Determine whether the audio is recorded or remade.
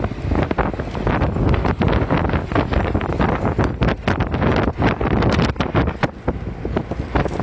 recorded